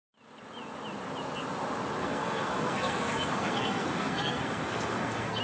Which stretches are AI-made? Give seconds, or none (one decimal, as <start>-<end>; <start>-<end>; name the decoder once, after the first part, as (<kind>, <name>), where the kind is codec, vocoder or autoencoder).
2.0-5.4 (codec, SNAC)